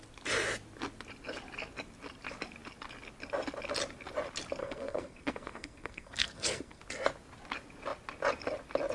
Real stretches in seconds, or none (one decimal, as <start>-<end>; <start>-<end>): 0.0-4.6; 6.8-8.9